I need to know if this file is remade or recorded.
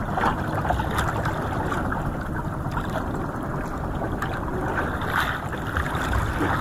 recorded